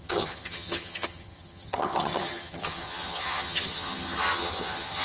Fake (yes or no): yes